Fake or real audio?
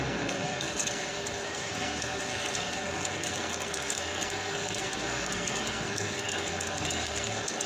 fake